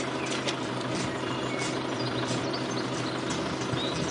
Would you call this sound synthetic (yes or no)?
no